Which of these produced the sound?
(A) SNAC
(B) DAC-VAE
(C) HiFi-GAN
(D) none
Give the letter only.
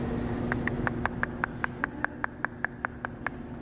D